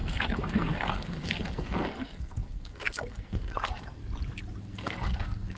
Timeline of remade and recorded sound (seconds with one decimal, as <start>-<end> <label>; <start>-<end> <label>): 0.0-4.0 remade; 4.0-4.6 recorded; 4.6-5.6 remade